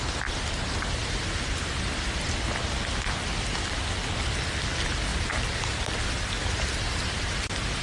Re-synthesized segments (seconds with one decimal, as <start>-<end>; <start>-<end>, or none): 5.1-6.0